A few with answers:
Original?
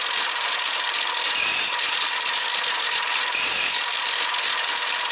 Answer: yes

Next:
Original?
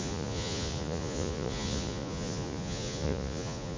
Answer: no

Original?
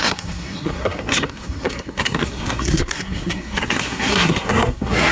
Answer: no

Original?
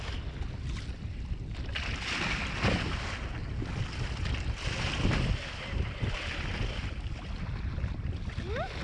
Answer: yes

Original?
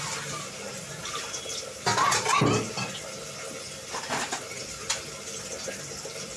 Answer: yes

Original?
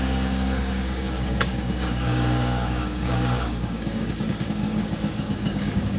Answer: no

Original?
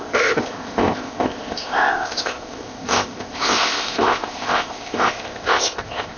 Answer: no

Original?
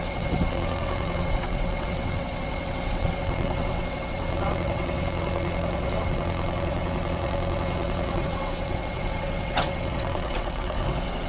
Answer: no